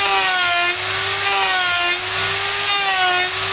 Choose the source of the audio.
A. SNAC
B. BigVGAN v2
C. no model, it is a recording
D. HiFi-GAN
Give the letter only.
C